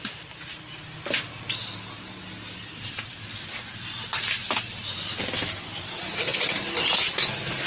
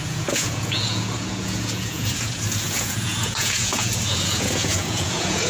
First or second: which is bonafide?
first